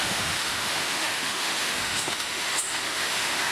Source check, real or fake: fake